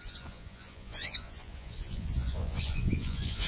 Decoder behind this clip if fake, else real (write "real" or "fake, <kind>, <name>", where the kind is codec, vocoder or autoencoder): fake, vocoder, Vocos